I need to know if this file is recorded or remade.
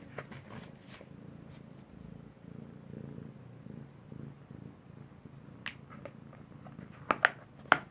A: recorded